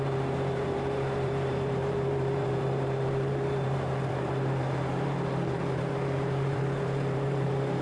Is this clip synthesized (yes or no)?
yes